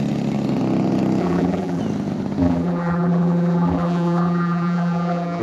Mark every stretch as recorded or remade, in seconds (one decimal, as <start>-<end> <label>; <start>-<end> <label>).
0.0-1.2 recorded; 1.2-1.8 remade; 1.8-2.4 recorded; 2.4-5.4 remade